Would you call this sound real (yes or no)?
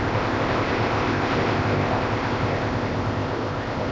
no